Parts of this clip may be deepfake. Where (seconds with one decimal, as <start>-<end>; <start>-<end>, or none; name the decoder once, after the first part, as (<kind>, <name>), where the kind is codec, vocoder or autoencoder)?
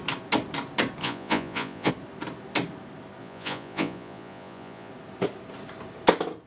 1.0-1.9 (vocoder, Vocos); 3.2-4.9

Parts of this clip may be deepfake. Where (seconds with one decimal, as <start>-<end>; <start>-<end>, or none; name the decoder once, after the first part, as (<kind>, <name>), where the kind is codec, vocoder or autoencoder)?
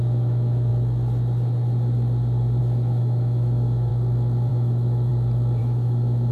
0.0-0.7 (autoencoder, DAC-VAE); 2.6-3.9; 4.5-5.1; 5.6-6.3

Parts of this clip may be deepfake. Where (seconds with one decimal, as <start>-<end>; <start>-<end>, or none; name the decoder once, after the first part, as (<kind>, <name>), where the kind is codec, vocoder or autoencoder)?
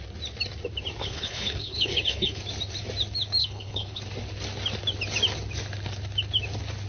1.0-2.4 (codec, HILCodec); 3.4-4.0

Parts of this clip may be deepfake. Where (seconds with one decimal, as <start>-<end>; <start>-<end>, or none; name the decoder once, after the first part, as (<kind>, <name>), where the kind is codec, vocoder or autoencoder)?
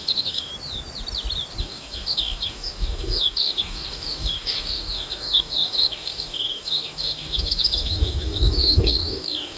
0.0-0.5 (codec, DAC); 1.6-9.6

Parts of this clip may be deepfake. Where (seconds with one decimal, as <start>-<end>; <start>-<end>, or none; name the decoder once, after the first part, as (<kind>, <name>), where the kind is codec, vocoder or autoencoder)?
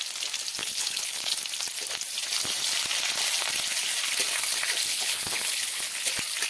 0.6-1.3 (codec, HILCodec); 4.9-6.1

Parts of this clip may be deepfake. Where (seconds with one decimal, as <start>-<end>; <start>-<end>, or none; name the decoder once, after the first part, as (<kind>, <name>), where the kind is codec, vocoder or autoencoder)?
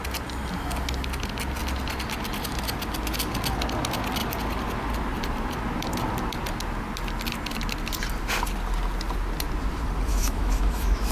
10.1-11.1 (autoencoder, DAC-VAE)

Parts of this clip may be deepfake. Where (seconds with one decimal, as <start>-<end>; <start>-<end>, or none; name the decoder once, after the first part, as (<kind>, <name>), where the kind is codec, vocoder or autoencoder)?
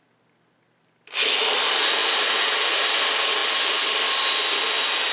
none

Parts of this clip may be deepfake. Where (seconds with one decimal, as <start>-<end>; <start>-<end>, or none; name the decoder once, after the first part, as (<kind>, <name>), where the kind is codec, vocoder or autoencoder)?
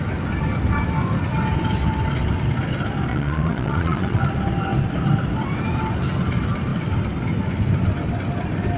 3.1-4.2 (vocoder, Vocos)